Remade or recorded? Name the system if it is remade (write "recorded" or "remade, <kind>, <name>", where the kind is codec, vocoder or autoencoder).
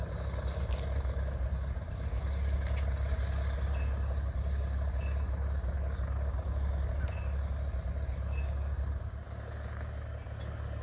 recorded